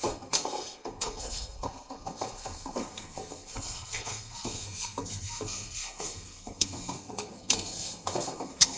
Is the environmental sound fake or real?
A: fake